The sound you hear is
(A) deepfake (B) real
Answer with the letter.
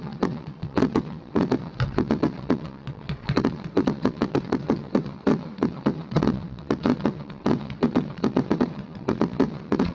A